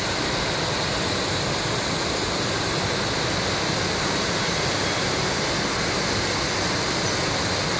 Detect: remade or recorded recorded